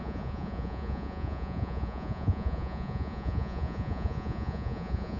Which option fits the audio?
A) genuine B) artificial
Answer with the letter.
B